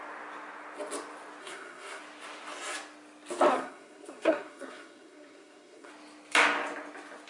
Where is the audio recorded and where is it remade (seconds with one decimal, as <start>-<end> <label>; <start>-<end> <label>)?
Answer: 0.0-1.4 recorded; 1.4-2.0 remade; 2.0-3.5 recorded; 3.5-5.9 remade; 5.9-7.3 recorded